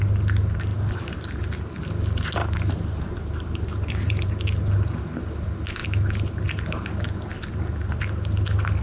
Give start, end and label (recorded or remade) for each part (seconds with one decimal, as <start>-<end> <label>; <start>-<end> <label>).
0.0-0.7 recorded; 0.7-1.4 remade; 1.4-2.4 recorded; 2.4-4.3 remade; 4.3-8.8 recorded